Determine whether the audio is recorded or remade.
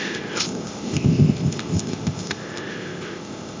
remade